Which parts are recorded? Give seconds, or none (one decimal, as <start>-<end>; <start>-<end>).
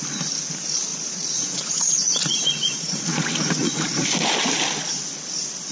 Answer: 0.0-0.9; 3.8-5.7